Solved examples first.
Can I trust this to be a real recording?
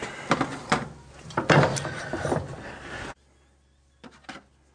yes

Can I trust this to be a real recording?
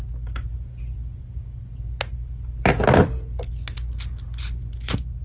yes